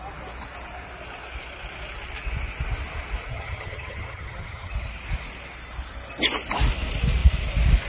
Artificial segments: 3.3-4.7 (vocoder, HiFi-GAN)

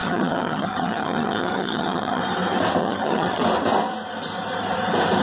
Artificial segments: 0.0-2.2 (vocoder, HiFi-GAN); 2.8-3.4

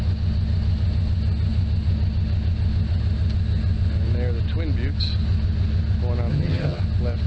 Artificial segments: 6.3-6.8 (vocoder, HiFi-GAN)

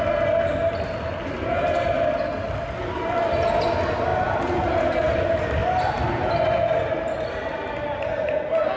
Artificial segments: none

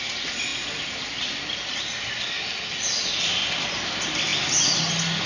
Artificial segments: none

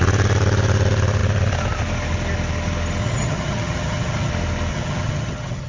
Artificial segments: 3.0-4.3 (vocoder, HiFi-GAN); 4.7-5.7